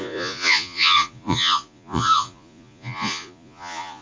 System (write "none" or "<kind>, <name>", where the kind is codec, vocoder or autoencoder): vocoder, Vocos